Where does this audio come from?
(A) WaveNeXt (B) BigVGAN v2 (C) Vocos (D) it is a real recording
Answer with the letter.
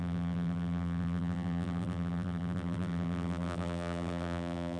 B